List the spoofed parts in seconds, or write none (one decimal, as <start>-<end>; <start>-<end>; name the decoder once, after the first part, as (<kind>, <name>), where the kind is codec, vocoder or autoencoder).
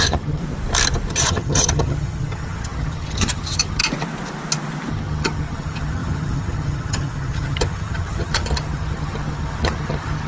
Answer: 0.0-0.4 (vocoder, HiFi-GAN); 1.1-3.8; 4.9-10.3